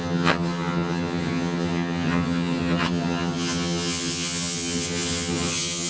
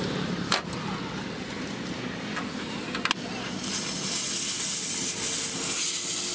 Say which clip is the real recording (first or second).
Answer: second